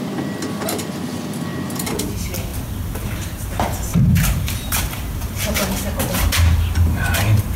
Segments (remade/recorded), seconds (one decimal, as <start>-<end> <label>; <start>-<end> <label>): 0.0-1.5 recorded; 1.5-2.1 remade; 2.1-3.9 recorded; 3.9-5.2 remade; 5.2-7.6 recorded